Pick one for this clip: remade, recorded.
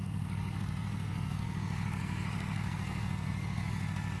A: remade